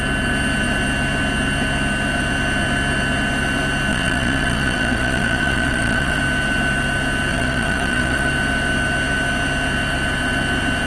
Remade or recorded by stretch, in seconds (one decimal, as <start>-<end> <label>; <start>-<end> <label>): 0.0-3.9 recorded; 3.9-6.2 remade; 6.2-7.3 recorded; 7.3-8.3 remade; 8.3-10.9 recorded